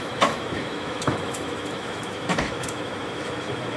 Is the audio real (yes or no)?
no